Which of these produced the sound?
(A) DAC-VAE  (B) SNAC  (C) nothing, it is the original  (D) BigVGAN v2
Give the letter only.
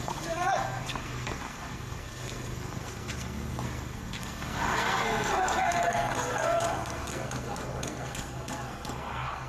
B